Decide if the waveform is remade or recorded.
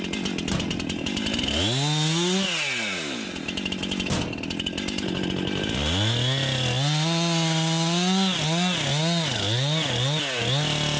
recorded